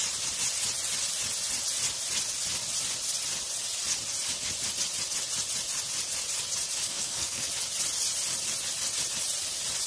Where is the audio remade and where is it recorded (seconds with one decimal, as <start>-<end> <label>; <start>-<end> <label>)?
0.0-6.9 recorded; 6.9-7.5 remade; 7.5-9.9 recorded